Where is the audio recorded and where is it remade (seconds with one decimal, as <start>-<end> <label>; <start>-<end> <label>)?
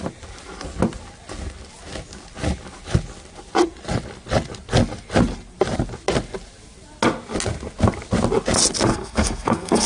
0.0-8.9 recorded; 8.9-9.9 remade